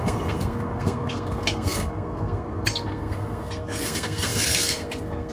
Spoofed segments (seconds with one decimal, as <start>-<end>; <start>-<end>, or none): 0.0-5.3